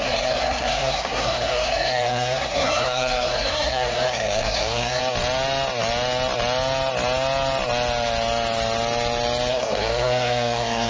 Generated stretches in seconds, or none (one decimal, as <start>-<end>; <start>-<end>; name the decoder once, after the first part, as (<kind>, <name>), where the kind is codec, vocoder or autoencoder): 0.0-5.0 (codec, SNAC); 9.5-10.9